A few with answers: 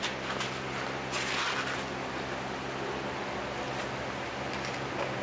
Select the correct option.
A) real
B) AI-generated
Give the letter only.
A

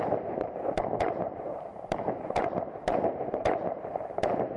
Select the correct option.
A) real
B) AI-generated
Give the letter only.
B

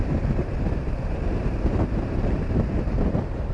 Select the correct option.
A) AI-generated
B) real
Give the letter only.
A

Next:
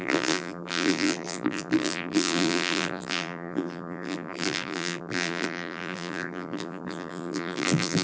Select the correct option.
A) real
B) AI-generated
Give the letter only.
B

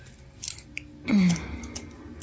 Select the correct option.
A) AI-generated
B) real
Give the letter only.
B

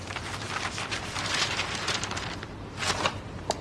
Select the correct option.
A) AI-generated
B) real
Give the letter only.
A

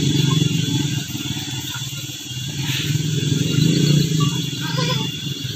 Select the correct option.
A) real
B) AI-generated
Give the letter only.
A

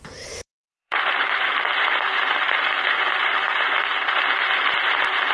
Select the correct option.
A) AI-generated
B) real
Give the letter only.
A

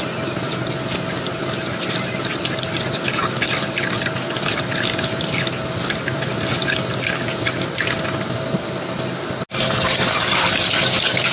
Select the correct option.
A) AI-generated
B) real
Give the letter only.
B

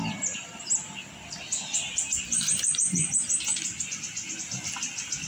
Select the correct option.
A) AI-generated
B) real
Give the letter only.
B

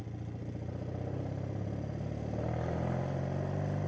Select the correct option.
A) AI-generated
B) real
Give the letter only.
B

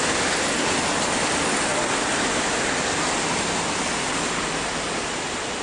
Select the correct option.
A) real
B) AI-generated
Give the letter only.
A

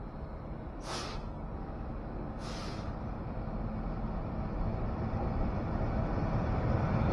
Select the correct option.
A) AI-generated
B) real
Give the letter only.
B